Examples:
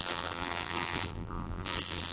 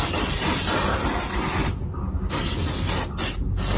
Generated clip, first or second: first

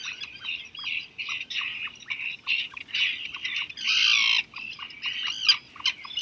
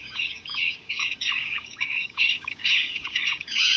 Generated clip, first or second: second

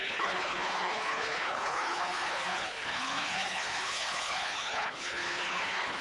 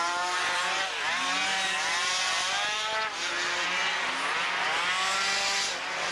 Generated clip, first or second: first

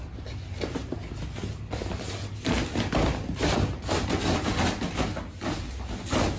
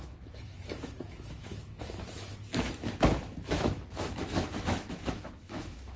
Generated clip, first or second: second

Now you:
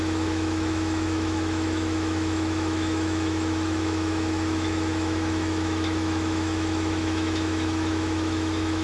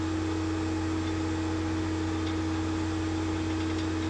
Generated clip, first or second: first